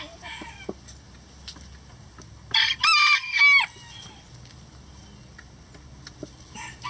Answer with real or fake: real